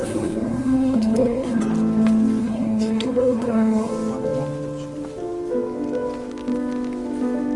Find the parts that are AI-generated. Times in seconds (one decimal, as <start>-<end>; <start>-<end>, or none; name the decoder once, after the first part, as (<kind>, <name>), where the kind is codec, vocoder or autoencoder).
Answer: 0.0-1.6 (codec, SNAC); 2.4-3.9